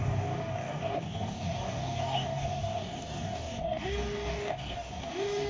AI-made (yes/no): yes